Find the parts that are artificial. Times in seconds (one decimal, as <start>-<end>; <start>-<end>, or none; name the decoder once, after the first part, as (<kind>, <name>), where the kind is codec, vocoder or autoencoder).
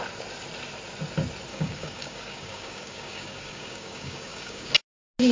1.5-4.7 (codec, DAC)